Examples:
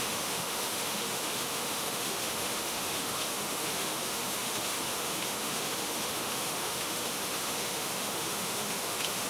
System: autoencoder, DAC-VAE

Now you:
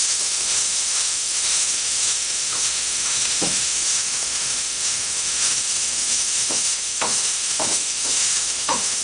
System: autoencoder, DAC-VAE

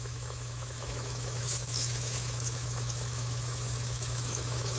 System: autoencoder, DAC-VAE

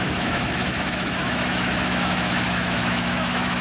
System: autoencoder, DAC-VAE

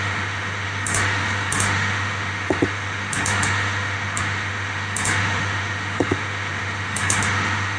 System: autoencoder, DAC-VAE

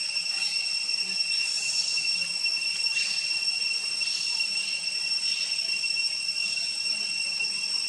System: none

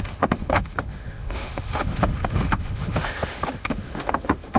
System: autoencoder, DAC-VAE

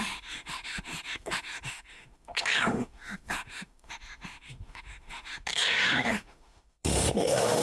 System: autoencoder, DAC-VAE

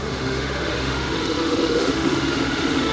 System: autoencoder, DAC-VAE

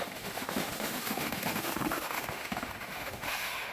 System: autoencoder, DAC-VAE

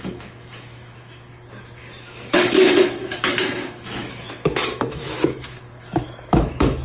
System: autoencoder, DAC-VAE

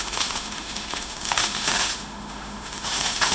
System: autoencoder, DAC-VAE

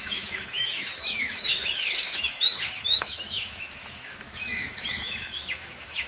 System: autoencoder, DAC-VAE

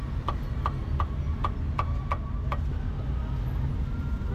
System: none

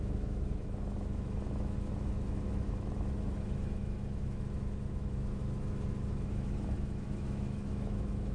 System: autoencoder, DAC-VAE